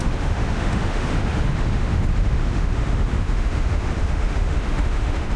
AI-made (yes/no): yes